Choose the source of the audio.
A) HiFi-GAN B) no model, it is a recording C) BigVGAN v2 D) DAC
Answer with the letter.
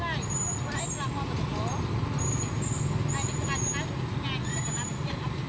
B